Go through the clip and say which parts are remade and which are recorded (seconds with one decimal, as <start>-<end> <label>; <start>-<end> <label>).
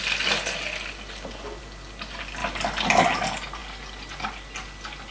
0.0-5.1 recorded